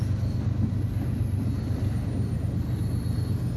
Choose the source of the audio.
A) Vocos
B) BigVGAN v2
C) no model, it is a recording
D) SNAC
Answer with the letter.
C